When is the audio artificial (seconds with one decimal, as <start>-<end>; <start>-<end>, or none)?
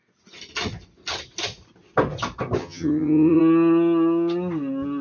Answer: 2.6-3.4